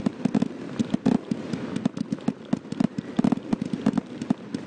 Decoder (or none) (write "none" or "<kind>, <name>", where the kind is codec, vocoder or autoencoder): none